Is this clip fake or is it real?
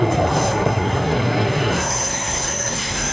fake